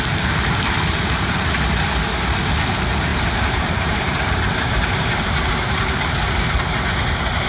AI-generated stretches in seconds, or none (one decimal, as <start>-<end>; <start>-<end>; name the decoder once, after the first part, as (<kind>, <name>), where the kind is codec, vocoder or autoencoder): 3.1-7.5 (vocoder, BigVGAN v2)